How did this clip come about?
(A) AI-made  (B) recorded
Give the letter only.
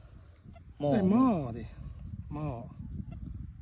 B